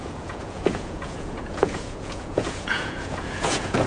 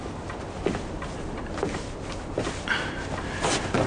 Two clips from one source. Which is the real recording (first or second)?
second